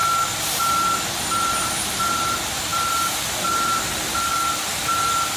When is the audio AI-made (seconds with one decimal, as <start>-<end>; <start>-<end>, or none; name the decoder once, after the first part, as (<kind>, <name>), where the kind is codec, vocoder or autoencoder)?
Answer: 1.5-4.3 (vocoder, BigVGAN v2)